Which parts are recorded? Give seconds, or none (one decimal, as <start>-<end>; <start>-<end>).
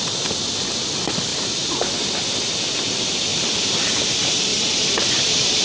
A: 0.0-1.3; 1.9-3.3; 4.1-4.5